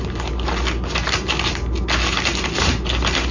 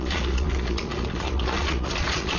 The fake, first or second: second